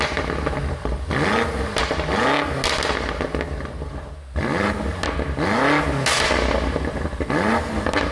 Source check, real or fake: real